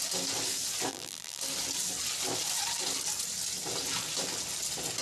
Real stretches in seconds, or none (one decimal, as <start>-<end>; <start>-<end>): 0.0-0.9; 1.4-5.0